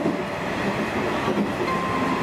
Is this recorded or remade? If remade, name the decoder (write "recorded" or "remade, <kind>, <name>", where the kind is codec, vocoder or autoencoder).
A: recorded